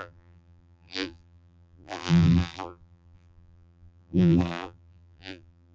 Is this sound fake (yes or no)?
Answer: yes